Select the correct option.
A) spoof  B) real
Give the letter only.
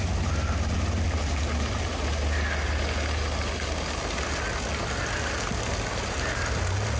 B